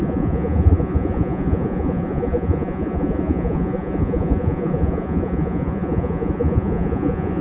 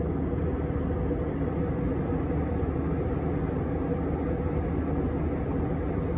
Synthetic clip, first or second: first